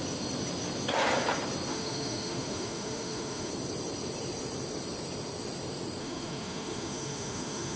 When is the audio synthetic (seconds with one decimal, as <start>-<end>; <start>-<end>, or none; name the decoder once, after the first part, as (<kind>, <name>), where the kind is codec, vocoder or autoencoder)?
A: 1.7-3.5 (autoencoder, DAC-VAE); 6.0-7.8